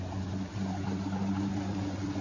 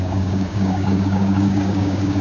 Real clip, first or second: first